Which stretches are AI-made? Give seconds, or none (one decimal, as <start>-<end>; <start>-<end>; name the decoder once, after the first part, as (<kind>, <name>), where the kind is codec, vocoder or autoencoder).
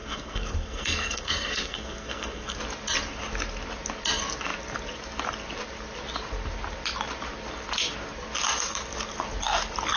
0.0-2.6 (codec, SNAC)